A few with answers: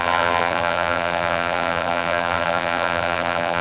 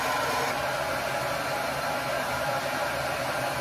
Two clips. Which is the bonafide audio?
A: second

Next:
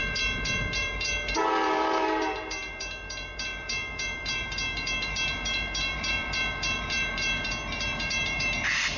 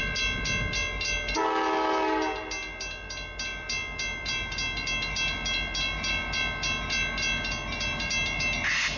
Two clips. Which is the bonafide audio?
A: second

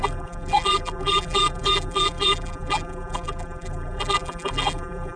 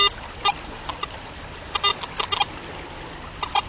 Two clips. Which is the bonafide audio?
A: second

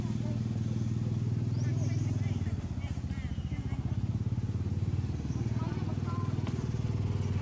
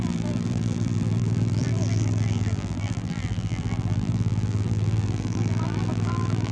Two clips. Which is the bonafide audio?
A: first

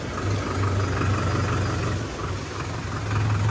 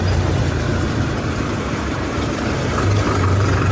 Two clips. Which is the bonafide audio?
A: first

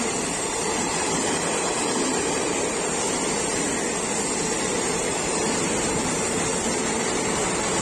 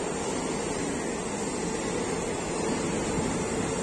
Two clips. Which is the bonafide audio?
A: second